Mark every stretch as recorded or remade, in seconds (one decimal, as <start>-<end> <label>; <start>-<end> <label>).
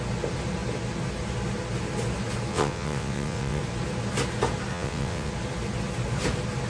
0.0-2.5 recorded; 2.5-3.6 remade; 3.6-4.7 recorded; 4.7-5.3 remade; 5.3-6.7 recorded